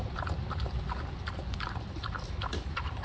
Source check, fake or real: real